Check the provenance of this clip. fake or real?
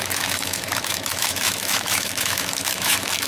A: fake